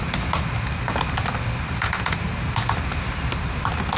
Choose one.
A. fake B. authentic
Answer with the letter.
B